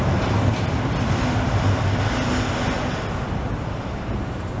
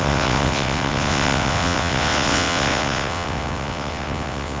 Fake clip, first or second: second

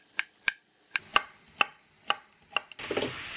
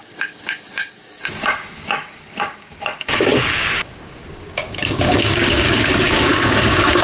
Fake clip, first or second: second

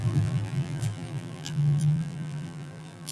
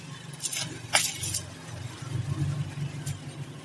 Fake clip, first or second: first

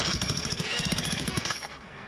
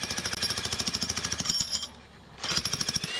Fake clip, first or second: first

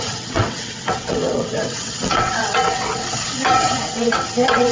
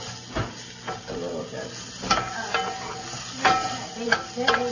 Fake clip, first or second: first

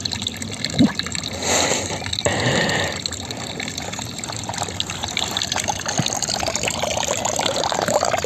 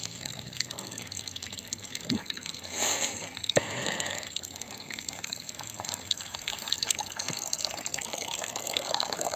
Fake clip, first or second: second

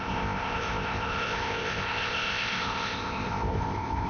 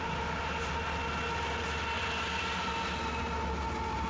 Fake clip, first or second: first